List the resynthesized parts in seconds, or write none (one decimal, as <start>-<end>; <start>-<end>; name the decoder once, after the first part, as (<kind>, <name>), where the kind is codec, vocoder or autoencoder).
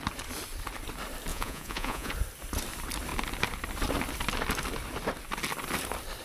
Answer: 1.3-2.1 (vocoder, Vocos)